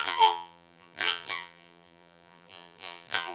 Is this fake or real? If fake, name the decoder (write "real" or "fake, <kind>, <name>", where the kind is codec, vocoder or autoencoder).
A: fake, vocoder, BigVGAN v2